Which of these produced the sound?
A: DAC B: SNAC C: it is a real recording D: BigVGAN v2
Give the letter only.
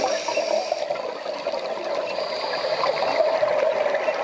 C